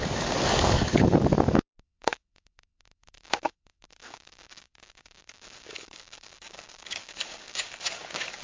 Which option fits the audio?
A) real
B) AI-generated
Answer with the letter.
B